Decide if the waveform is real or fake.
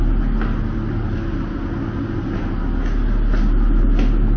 real